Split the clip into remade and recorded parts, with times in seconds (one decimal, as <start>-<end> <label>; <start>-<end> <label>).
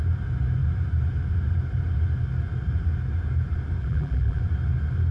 0.0-3.8 recorded; 3.8-4.4 remade; 4.4-5.1 recorded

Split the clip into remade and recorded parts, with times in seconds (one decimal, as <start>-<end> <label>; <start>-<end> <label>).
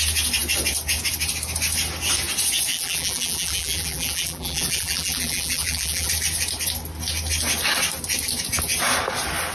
0.0-2.7 recorded; 2.7-6.1 remade; 6.1-9.5 recorded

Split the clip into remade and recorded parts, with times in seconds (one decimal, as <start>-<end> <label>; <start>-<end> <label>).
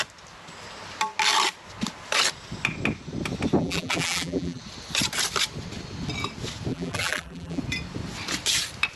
0.0-3.6 recorded; 3.6-4.6 remade; 4.6-6.7 recorded; 6.7-7.6 remade; 7.6-9.0 recorded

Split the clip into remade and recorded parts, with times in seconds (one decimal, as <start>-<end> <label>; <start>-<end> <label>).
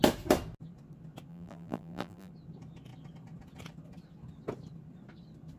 0.0-1.3 recorded; 1.3-2.3 remade; 2.3-5.6 recorded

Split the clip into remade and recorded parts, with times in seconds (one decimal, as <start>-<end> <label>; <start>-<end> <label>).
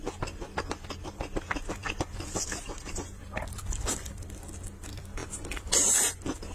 0.0-6.5 recorded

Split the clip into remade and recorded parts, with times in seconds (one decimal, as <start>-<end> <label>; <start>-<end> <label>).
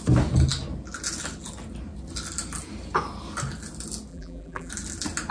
0.0-4.1 recorded; 4.1-4.7 remade; 4.7-5.3 recorded